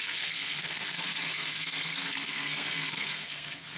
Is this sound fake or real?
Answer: fake